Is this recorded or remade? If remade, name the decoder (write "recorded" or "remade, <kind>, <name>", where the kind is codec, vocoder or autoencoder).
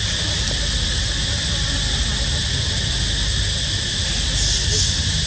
recorded